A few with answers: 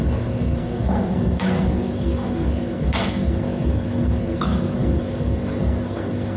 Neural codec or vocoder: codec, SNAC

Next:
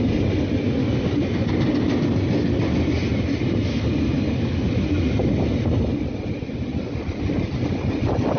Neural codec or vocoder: none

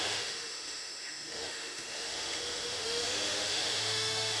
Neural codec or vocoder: autoencoder, DAC-VAE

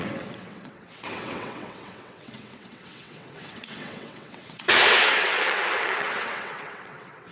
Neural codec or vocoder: vocoder, WaveNeXt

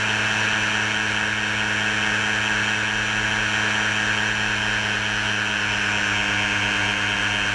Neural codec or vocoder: none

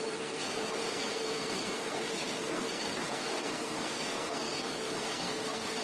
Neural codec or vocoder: codec, SNAC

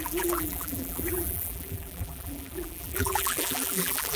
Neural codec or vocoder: vocoder, BigVGAN v2